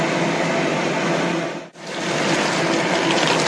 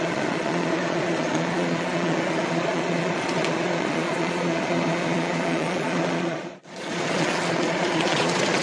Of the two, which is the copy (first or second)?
second